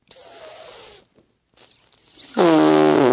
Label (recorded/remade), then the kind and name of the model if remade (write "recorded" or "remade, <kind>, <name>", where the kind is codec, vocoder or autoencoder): recorded